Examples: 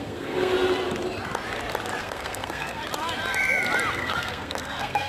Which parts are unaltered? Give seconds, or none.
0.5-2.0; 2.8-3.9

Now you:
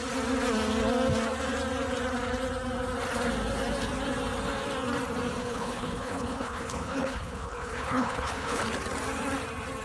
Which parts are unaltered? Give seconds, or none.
0.0-5.4; 8.6-9.8

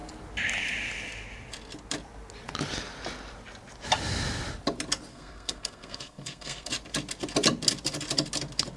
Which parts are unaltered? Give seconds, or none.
0.0-5.1; 6.7-8.8

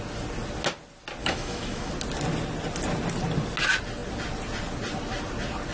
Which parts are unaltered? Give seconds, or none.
0.0-1.2; 1.9-5.7

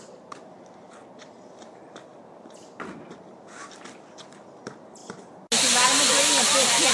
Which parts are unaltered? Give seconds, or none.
0.0-6.9

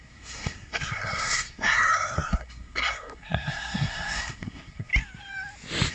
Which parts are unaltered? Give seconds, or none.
4.9-5.9